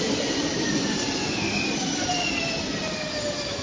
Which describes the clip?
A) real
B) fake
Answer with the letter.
A